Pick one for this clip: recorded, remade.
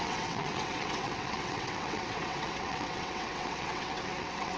remade